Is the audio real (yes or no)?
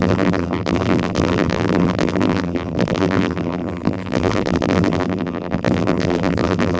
no